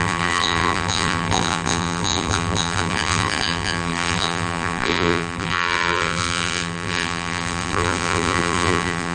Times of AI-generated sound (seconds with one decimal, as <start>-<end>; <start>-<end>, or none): 0.0-9.1